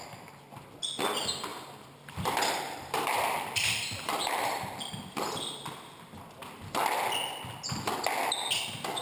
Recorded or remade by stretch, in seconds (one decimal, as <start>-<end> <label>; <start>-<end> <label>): 0.0-1.5 recorded; 1.5-6.6 remade; 6.6-9.0 recorded